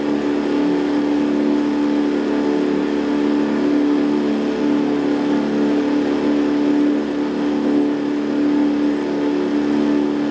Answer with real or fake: real